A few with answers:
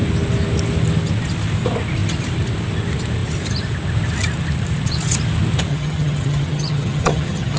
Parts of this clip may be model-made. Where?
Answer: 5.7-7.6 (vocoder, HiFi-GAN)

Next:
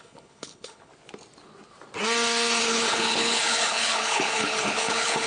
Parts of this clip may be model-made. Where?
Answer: 0.0-0.9 (codec, HILCodec); 2.6-5.3

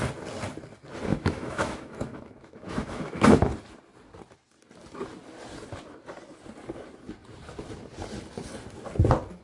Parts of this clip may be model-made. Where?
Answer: 1.1-3.4 (autoencoder, DAC-VAE)

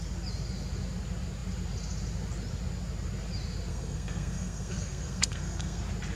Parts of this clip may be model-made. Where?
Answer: 3.7-5.8 (codec, SNAC)

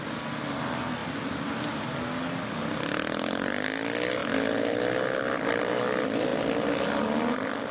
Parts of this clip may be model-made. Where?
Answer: none

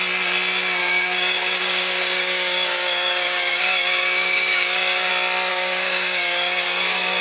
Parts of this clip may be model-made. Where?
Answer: 0.8-5.1 (codec, DAC); 5.5-7.2